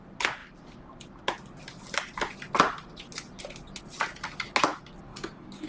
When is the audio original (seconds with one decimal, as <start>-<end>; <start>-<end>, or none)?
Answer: 0.0-5.1